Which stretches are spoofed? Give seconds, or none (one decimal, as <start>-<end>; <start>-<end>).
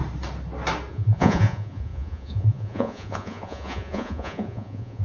0.9-5.0